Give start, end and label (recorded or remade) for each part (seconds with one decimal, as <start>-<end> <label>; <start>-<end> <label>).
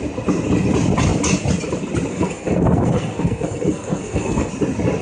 0.0-2.1 recorded; 2.1-4.5 remade; 4.5-5.0 recorded